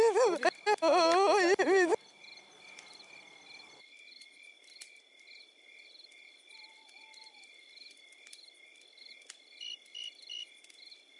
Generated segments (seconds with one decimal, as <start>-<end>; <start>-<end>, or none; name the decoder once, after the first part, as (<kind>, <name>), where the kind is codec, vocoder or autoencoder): none